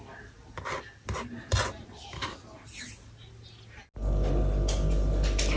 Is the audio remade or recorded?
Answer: recorded